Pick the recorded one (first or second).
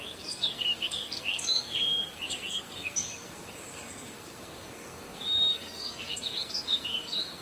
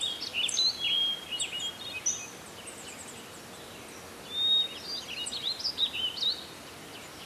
second